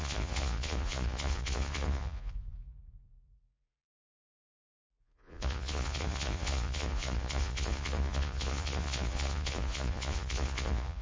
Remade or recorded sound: remade